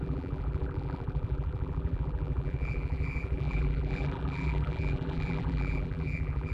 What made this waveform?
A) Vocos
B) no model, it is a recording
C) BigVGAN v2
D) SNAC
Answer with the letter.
C